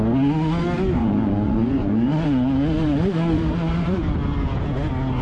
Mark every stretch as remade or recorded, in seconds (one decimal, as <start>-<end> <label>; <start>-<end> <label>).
0.0-1.0 recorded; 1.0-4.1 remade; 4.1-5.2 recorded